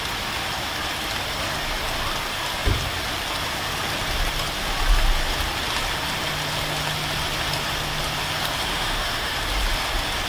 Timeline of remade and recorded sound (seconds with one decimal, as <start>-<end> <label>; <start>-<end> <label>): 0.0-8.7 recorded; 8.7-9.3 remade; 9.3-10.3 recorded